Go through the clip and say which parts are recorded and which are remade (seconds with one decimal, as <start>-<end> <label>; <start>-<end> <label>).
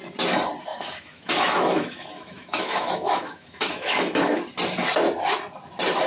0.0-0.7 recorded; 0.7-4.4 remade; 4.4-6.1 recorded